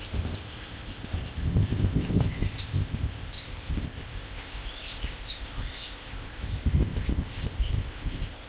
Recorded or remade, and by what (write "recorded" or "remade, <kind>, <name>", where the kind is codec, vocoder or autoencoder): remade, codec, ZipCodec